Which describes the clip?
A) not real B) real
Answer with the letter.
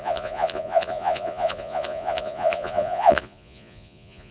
A